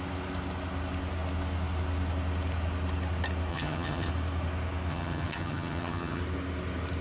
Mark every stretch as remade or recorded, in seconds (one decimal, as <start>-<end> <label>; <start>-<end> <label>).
0.0-3.5 recorded; 3.5-4.1 remade; 4.1-4.9 recorded; 4.9-6.2 remade; 6.2-7.0 recorded